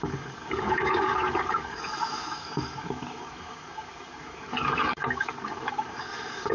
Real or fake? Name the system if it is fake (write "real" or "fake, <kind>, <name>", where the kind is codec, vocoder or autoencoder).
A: fake, codec, DAC